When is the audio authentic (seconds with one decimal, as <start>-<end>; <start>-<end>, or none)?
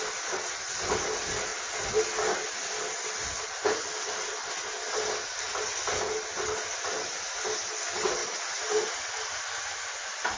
0.0-8.2